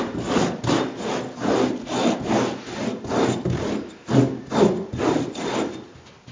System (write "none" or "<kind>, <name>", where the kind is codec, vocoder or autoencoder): none